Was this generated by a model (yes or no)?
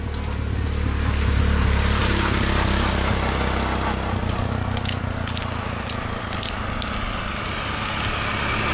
no